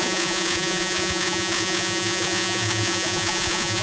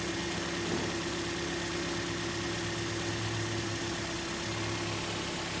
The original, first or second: second